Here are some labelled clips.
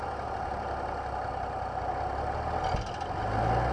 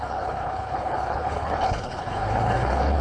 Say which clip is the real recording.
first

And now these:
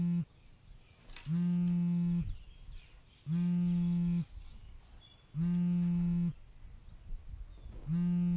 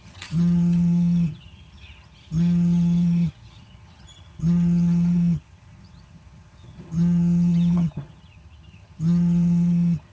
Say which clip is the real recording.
first